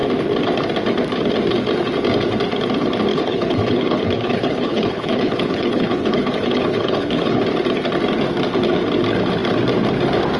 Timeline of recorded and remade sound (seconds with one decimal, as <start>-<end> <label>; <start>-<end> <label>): 0.0-3.1 recorded; 3.1-7.4 remade; 7.4-10.4 recorded